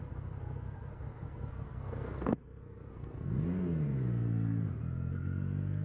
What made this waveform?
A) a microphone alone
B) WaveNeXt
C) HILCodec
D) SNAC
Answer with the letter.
D